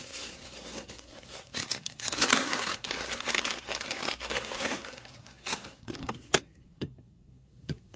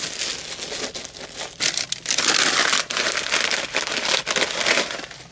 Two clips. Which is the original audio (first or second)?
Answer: second